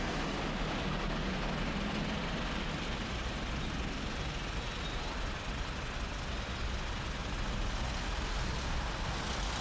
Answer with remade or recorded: recorded